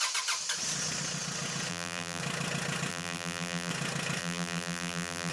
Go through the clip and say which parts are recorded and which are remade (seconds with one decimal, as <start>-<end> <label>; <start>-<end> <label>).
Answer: 0.0-1.7 recorded; 1.7-2.2 remade; 2.2-2.9 recorded; 2.9-3.7 remade; 3.7-4.2 recorded; 4.2-5.3 remade